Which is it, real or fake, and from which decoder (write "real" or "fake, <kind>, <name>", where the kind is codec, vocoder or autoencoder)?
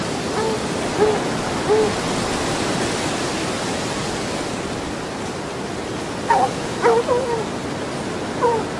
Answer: real